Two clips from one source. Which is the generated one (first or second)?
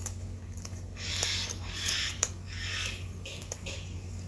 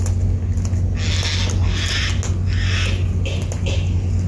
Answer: first